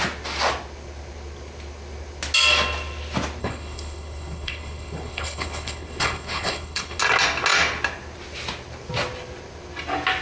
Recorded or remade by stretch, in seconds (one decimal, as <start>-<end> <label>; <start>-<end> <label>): 0.0-3.4 recorded; 3.4-7.0 remade; 7.0-10.2 recorded